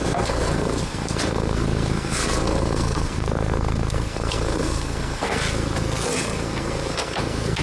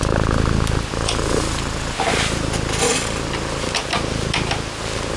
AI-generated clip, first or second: first